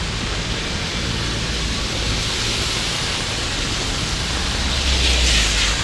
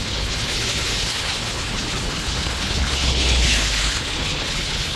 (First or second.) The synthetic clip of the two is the second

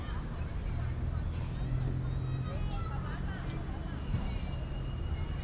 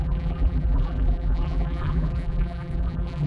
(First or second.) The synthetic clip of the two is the second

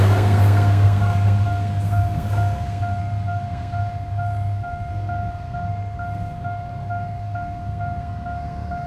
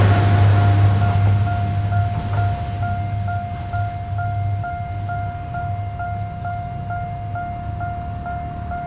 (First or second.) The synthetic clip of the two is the first